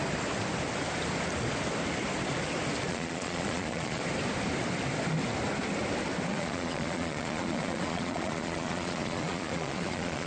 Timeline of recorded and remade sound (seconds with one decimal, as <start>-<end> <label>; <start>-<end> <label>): 0.0-2.9 recorded; 2.9-4.0 remade; 4.0-6.3 recorded; 6.3-10.3 remade